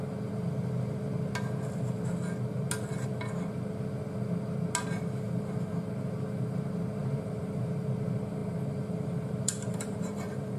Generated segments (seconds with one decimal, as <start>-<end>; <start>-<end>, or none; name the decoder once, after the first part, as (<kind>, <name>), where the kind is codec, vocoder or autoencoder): 7.0-7.7 (vocoder, BigVGAN v2); 8.4-10.6